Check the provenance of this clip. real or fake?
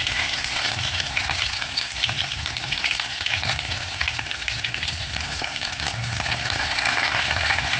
fake